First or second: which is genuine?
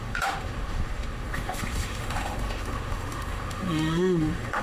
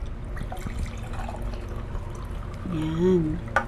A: second